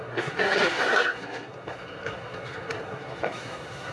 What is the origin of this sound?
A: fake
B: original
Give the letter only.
A